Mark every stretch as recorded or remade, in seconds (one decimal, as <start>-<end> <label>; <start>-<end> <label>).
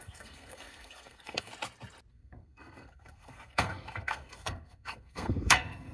0.0-1.5 remade; 1.5-2.1 recorded; 2.1-5.9 remade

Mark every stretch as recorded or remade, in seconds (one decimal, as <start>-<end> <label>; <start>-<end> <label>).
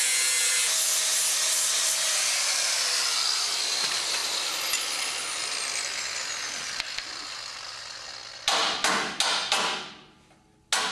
0.0-10.9 recorded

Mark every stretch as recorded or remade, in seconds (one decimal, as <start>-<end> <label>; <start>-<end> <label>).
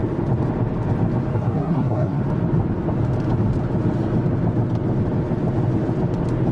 0.0-1.3 recorded; 1.3-2.2 remade; 2.2-6.5 recorded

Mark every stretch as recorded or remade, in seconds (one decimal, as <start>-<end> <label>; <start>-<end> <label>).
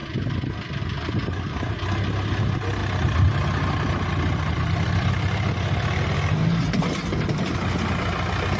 0.0-8.6 recorded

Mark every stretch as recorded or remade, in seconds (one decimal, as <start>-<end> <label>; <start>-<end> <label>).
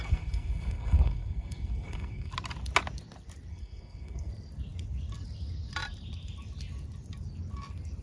0.0-2.3 remade; 2.3-3.5 recorded; 3.5-4.3 remade; 4.3-8.0 recorded